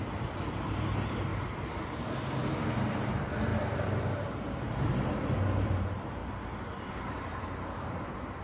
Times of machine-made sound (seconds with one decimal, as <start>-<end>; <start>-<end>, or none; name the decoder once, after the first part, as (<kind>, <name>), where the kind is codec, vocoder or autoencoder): 0.0-6.2 (vocoder, BigVGAN v2); 6.9-8.4